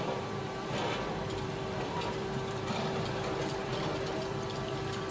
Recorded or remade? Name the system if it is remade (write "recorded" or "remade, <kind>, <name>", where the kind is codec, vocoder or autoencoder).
remade, vocoder, BigVGAN v2